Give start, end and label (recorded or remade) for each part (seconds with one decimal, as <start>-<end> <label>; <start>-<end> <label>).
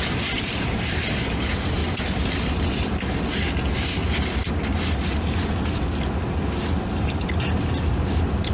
0.0-1.8 remade; 1.8-6.9 recorded; 6.9-8.5 remade